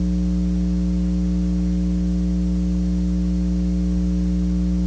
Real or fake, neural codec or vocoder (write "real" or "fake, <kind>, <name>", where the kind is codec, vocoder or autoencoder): real